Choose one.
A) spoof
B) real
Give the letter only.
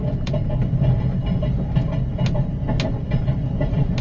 B